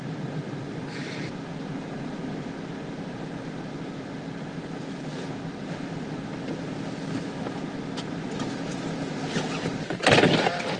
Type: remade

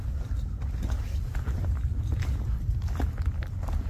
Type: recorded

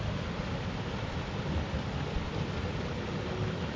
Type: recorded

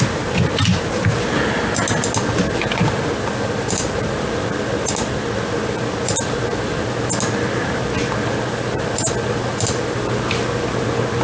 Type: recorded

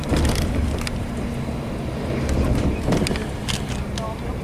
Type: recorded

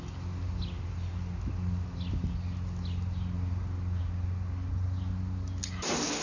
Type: recorded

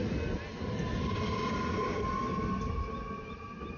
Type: recorded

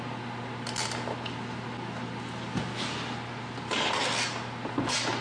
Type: recorded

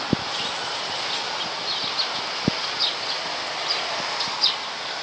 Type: recorded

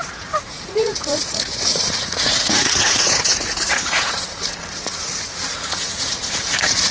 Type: remade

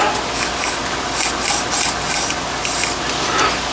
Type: recorded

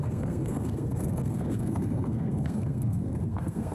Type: remade